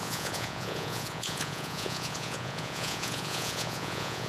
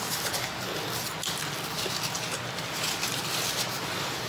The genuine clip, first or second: second